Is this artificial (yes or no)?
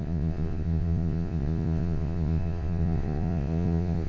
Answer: yes